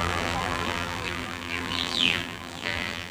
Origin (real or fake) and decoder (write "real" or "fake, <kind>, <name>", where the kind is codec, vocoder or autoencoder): fake, vocoder, BigVGAN v2